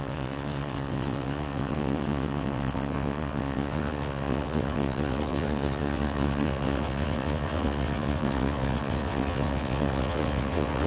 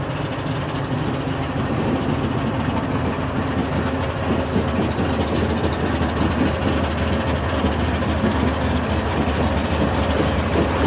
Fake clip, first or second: first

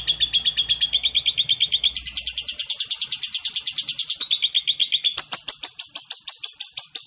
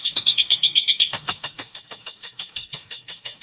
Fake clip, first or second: second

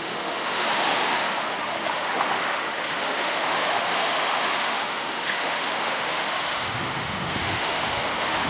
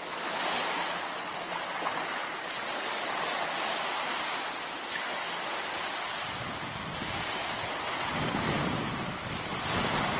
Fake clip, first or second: first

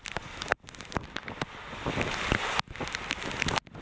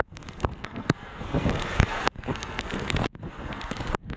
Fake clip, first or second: second